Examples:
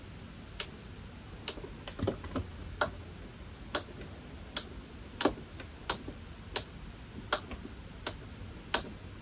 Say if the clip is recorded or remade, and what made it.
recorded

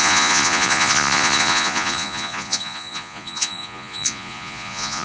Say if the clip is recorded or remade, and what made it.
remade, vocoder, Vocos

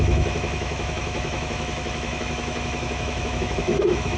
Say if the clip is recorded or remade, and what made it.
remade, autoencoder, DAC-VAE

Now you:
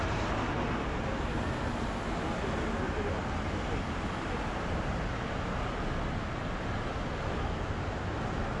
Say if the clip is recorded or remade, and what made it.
recorded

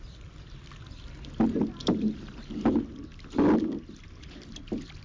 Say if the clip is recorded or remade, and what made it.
recorded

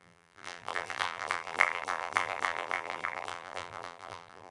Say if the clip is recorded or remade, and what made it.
remade, vocoder, BigVGAN v2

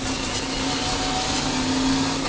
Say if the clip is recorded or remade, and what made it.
recorded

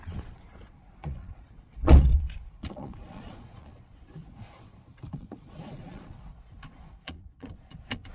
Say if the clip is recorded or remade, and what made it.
remade, vocoder, Vocos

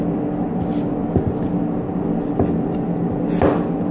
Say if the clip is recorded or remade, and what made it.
recorded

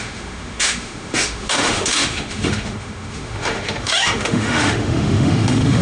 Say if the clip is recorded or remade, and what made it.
remade, autoencoder, DAC-VAE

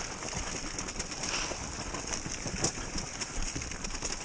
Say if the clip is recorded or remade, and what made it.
recorded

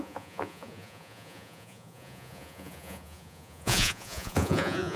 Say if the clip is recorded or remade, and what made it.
remade, vocoder, Vocos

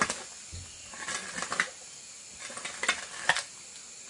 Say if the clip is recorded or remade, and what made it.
recorded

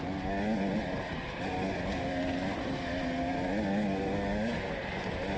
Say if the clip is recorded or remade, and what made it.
recorded